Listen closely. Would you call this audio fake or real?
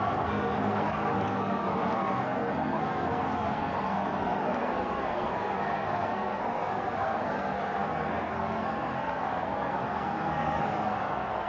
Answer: fake